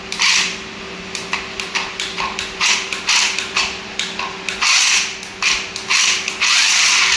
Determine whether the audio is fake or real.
real